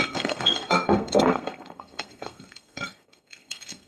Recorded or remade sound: remade